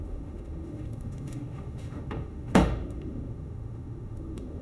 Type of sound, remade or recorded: remade